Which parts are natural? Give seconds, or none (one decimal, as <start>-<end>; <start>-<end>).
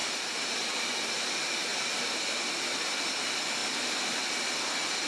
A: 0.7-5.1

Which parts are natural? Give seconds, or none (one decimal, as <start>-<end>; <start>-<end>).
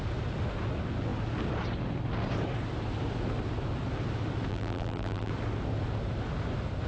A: 0.0-4.5; 5.3-6.9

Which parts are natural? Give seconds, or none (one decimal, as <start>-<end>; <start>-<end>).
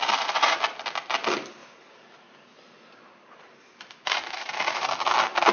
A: 0.6-1.6; 4.9-5.5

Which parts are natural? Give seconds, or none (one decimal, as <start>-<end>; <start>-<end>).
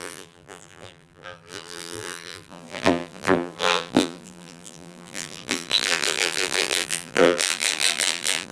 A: none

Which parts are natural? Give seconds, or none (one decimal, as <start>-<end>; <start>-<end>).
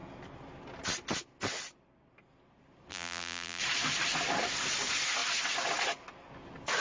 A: 0.0-2.9; 3.6-6.8